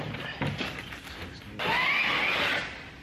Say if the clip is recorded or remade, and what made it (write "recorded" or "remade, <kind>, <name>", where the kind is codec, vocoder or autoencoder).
recorded